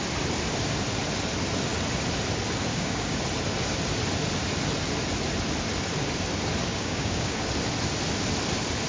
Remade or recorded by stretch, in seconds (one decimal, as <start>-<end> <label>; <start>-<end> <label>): 0.0-2.7 recorded; 2.7-3.2 remade; 3.2-6.7 recorded; 6.7-7.4 remade; 7.4-8.9 recorded